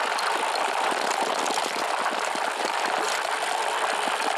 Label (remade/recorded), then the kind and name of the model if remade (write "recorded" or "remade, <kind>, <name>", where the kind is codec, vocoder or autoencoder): recorded